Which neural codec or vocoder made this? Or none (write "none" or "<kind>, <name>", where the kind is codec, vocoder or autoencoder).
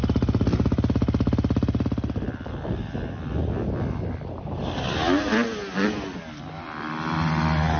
none